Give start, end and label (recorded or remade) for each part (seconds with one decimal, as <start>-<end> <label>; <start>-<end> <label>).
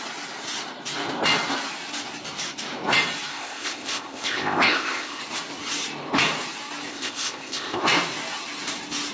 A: 0.0-3.3 recorded; 3.3-5.2 remade; 5.2-6.9 recorded; 6.9-7.8 remade; 7.8-9.1 recorded